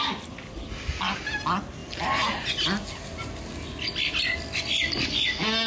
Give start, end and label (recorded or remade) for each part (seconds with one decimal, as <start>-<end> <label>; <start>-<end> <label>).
0.0-5.7 recorded